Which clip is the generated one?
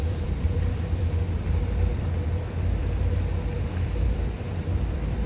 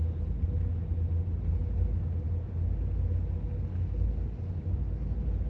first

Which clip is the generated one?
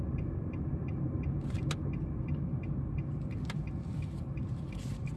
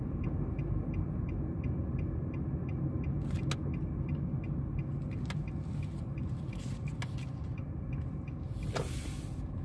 first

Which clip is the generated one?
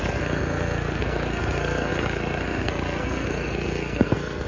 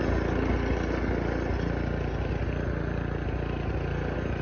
first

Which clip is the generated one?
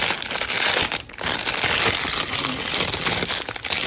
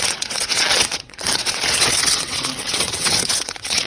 second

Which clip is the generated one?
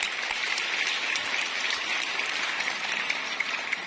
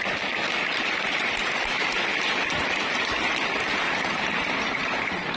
second